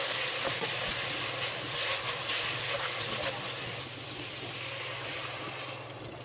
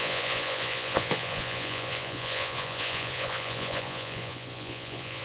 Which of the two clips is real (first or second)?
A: first